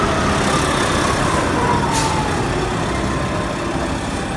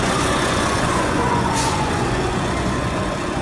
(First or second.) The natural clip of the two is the first